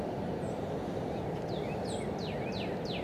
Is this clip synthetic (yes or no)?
no